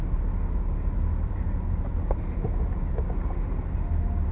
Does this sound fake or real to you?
real